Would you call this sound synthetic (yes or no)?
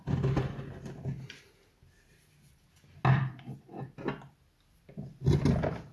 no